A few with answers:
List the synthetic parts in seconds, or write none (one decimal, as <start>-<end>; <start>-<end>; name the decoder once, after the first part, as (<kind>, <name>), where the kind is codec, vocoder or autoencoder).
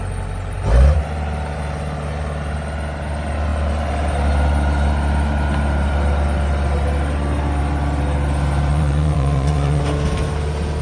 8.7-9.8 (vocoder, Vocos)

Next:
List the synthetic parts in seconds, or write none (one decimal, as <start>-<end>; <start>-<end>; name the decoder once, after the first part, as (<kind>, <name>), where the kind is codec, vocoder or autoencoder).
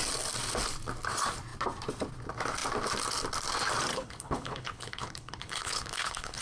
3.9-6.4 (codec, HILCodec)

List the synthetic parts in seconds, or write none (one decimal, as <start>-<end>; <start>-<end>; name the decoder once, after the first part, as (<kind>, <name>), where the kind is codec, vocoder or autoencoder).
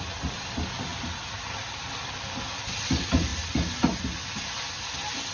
none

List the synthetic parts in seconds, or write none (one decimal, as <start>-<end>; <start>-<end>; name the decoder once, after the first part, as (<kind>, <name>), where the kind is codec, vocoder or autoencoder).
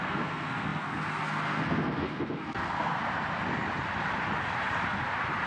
0.0-3.0 (codec, SNAC)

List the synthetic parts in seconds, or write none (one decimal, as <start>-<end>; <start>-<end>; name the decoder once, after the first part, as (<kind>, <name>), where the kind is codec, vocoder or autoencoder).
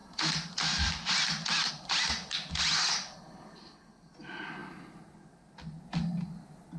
none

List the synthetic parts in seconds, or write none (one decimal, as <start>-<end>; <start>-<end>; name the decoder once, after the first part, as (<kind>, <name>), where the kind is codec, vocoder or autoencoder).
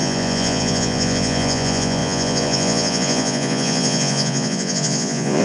0.0-5.4 (vocoder, Vocos)